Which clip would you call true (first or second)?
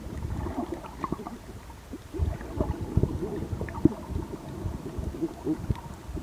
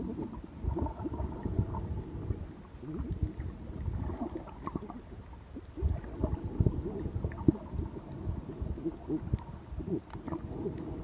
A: second